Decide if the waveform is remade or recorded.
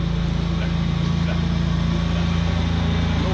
recorded